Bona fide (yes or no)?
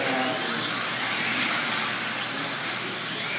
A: yes